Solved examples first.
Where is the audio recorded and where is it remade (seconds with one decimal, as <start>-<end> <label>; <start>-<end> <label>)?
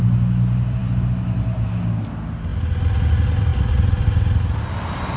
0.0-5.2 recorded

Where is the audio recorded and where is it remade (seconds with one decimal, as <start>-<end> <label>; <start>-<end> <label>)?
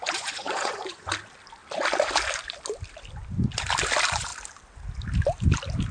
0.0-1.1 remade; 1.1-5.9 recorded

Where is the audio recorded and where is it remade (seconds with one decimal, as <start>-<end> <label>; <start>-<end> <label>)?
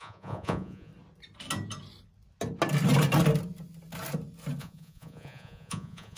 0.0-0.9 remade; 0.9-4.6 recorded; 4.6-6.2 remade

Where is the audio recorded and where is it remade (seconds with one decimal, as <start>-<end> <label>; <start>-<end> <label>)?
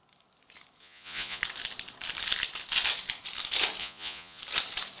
0.0-0.8 recorded; 0.8-1.4 remade; 1.4-3.8 recorded; 3.8-4.4 remade; 4.4-5.0 recorded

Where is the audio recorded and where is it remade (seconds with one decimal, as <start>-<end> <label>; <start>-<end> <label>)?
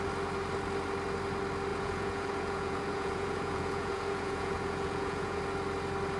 0.0-1.7 recorded; 1.7-5.4 remade; 5.4-6.2 recorded